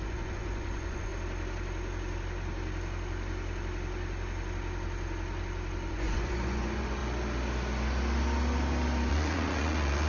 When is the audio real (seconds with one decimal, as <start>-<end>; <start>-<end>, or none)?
1.1-5.9; 7.0-9.1